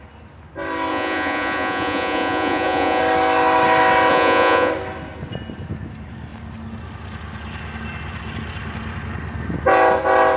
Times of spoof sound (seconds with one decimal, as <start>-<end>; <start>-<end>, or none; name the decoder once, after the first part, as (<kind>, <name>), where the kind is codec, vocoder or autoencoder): 0.9-3.0 (vocoder, Vocos); 4.1-4.7